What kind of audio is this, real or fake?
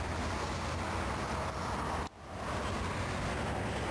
real